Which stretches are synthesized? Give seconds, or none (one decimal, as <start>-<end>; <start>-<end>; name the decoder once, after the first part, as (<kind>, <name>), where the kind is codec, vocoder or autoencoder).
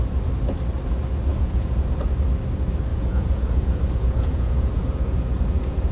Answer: 1.3-1.9 (vocoder, Vocos); 2.9-5.9